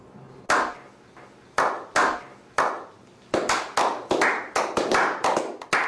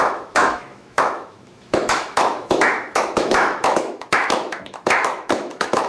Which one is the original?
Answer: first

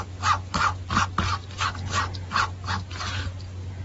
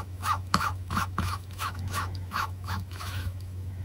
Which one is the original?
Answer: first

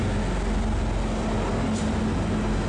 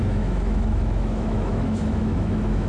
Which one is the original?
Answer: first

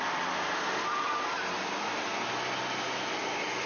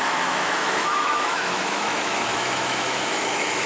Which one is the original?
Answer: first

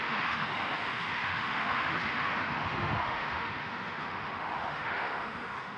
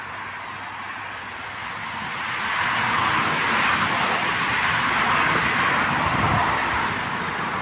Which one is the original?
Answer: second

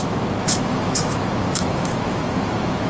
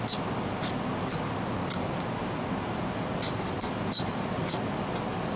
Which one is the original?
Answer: second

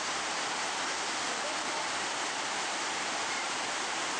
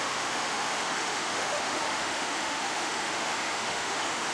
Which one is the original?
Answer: first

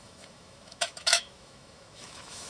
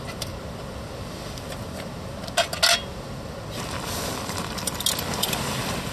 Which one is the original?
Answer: second